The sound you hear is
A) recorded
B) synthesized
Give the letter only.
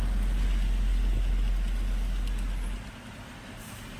A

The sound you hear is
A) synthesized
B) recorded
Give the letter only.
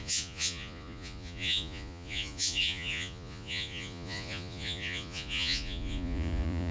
A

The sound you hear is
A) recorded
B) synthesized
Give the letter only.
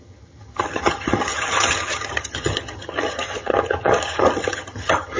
B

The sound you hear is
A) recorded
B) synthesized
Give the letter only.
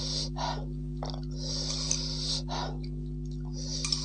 A